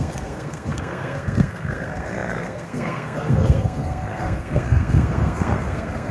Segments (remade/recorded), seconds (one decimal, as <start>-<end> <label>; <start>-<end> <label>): 0.0-6.1 remade